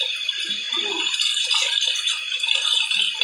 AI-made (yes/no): yes